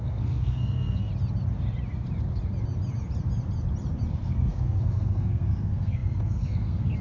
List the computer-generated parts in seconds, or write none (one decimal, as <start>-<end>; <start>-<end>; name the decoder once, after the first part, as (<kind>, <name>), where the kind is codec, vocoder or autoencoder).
0.0-1.1 (codec, SNAC); 4.1-7.0